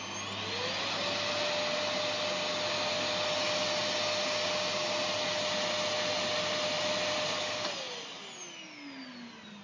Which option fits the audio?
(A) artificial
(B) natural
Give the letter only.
B